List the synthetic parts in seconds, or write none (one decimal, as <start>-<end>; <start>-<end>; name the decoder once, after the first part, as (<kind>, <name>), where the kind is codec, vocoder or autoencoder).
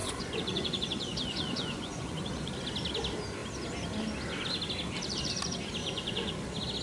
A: 0.0-2.5 (vocoder, Vocos); 5.8-6.3